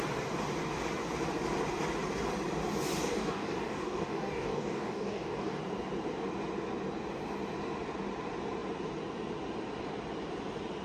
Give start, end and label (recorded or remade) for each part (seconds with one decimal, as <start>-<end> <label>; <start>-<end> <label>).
0.0-3.0 recorded; 3.0-5.6 remade; 5.6-10.8 recorded